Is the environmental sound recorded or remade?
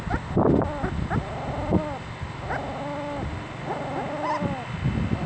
recorded